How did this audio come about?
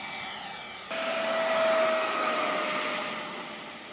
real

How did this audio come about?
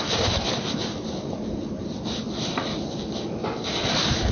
real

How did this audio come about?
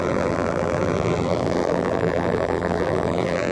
fake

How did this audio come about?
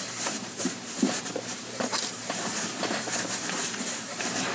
fake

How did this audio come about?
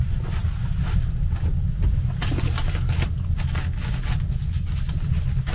real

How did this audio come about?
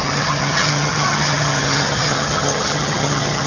fake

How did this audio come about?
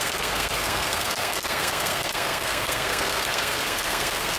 fake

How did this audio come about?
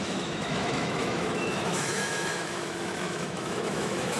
fake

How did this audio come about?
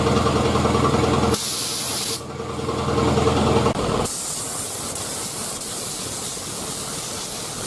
real